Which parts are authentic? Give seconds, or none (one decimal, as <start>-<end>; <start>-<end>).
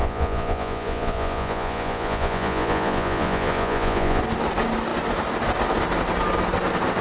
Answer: 4.2-7.0